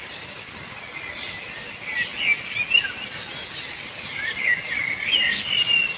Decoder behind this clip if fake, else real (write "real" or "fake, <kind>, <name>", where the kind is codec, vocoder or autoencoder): real